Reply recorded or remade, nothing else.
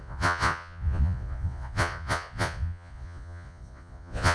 remade